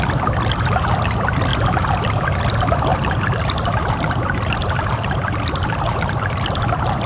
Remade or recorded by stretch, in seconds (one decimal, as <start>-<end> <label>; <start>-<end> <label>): 0.0-1.5 remade; 1.5-2.5 recorded; 2.5-7.1 remade